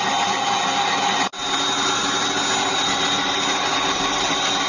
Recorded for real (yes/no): yes